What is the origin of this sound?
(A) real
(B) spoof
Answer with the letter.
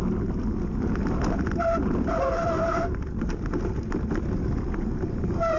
A